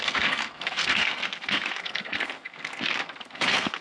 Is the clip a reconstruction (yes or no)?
yes